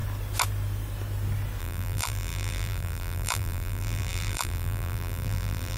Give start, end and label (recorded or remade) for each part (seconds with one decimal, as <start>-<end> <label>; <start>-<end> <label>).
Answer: 0.0-1.6 recorded; 1.6-5.8 remade